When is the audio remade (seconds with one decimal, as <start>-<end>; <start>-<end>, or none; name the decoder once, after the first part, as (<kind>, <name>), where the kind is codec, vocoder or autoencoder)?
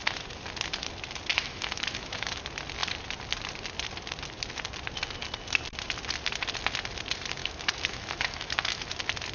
1.3-2.4 (autoencoder, DAC-VAE); 7.4-8.9